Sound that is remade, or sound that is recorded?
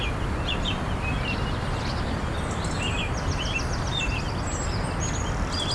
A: recorded